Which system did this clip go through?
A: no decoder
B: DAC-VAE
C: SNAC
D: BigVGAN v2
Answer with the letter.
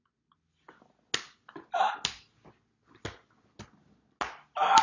A